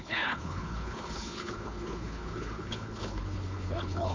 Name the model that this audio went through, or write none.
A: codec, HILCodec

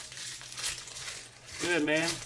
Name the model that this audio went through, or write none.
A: vocoder, Vocos